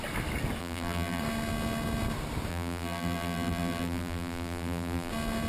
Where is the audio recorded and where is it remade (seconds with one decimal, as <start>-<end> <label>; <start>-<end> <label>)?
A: 0.0-0.6 recorded; 0.6-1.2 remade; 1.2-2.5 recorded; 2.5-5.1 remade; 5.1-5.5 recorded